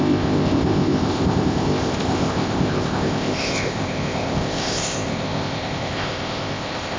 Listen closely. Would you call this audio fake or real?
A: fake